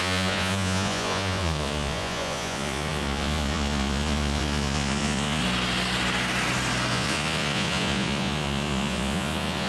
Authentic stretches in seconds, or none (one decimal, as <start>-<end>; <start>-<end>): 5.4-6.9